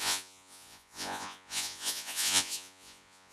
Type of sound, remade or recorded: remade